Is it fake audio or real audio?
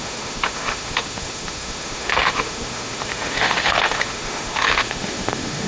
fake